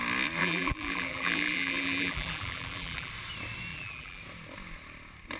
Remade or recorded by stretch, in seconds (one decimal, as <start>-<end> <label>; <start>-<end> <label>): 0.0-0.4 recorded; 0.4-3.1 remade; 3.1-3.7 recorded; 3.7-4.2 remade; 4.2-5.4 recorded